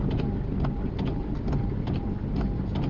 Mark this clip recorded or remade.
recorded